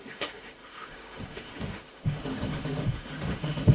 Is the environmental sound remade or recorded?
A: remade